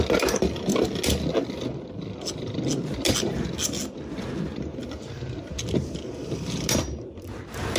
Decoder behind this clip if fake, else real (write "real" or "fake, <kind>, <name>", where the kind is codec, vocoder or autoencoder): real